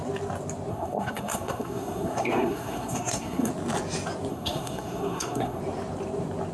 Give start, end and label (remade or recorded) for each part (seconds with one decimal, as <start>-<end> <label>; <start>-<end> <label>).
0.0-0.7 recorded; 0.7-3.5 remade; 3.5-4.3 recorded; 4.3-5.6 remade; 5.6-6.5 recorded